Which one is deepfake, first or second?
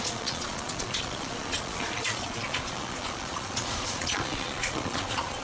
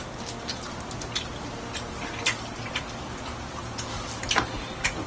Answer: first